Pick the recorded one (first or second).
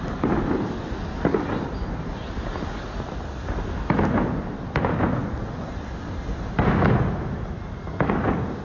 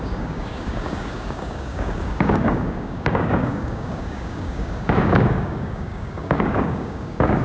first